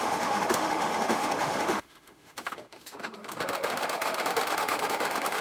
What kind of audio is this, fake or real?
fake